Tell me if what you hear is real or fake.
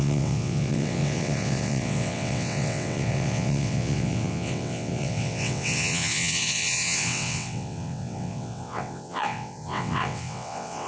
fake